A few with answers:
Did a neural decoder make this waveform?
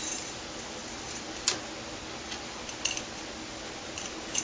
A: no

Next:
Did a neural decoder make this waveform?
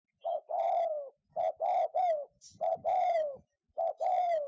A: yes